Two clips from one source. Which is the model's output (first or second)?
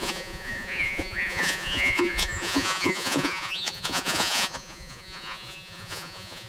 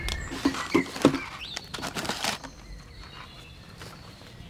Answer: first